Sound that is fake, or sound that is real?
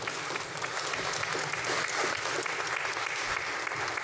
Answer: real